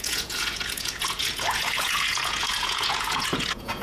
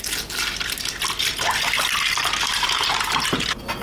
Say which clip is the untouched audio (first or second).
second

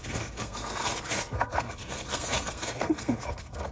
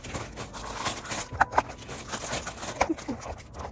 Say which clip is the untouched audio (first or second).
second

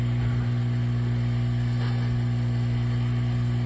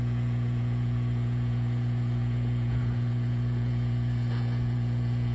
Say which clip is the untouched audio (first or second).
first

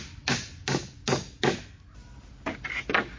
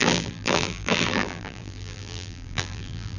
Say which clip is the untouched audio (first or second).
first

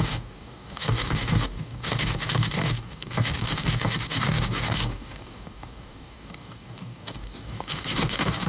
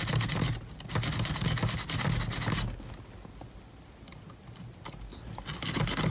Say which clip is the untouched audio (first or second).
second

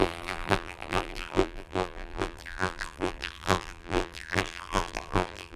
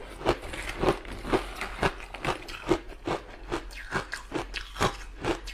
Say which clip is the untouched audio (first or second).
second